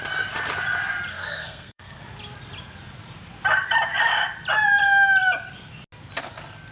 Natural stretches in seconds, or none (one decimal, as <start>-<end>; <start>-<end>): 0.0-1.1; 2.0-6.7